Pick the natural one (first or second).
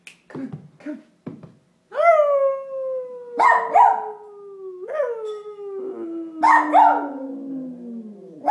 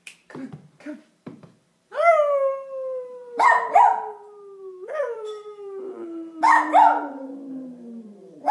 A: first